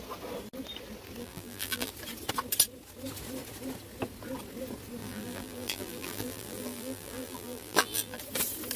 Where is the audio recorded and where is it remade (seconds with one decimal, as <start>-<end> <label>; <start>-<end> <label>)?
0.0-1.2 recorded; 1.2-1.9 remade; 1.9-5.0 recorded; 5.0-8.2 remade; 8.2-8.8 recorded